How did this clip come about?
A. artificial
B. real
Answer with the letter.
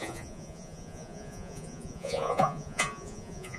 A